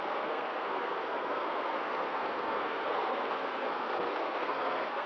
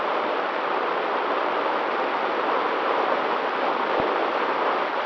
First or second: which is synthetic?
first